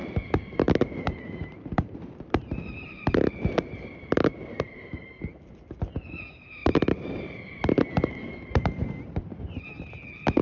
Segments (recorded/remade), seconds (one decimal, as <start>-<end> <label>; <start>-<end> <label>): 0.0-5.2 remade; 5.2-6.6 recorded; 6.6-9.6 remade; 9.6-10.4 recorded